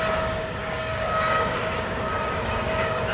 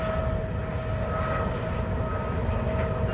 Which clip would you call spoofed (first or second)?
first